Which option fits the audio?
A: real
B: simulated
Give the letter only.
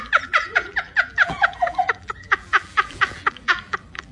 B